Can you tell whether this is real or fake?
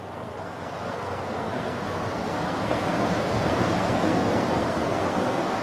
fake